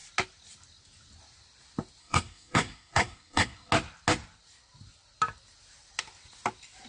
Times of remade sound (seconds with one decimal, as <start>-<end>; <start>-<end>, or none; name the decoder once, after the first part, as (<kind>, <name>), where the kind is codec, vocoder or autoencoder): 2.0-3.7 (codec, SNAC)